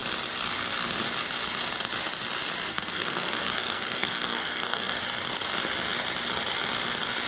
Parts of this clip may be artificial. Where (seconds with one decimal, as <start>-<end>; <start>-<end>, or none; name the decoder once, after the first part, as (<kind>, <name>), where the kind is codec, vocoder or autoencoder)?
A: 2.7-5.0 (codec, SNAC)